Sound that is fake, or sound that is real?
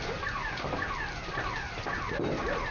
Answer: real